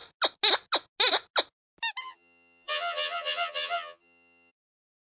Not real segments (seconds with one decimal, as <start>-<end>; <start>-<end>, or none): 2.0-4.5